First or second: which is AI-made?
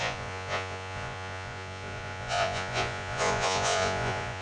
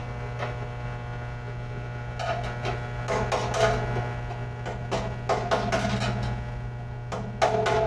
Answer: first